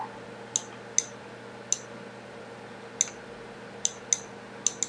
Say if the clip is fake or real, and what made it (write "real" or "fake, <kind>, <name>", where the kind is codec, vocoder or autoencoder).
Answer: real